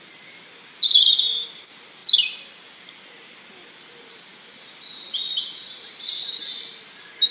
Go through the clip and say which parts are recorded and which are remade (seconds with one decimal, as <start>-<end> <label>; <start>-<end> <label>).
0.0-7.3 recorded